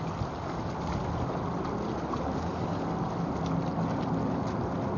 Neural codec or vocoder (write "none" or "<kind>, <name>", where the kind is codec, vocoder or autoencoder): none